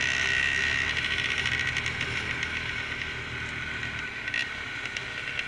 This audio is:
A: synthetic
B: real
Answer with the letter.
B